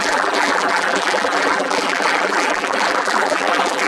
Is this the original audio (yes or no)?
no